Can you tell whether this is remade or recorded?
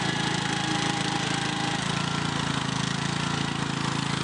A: recorded